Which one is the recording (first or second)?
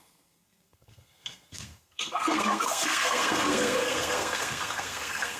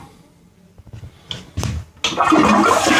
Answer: second